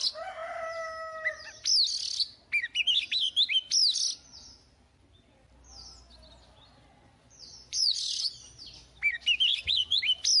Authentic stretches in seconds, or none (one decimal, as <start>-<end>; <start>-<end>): 0.0-7.0; 8.3-9.5; 10.0-10.4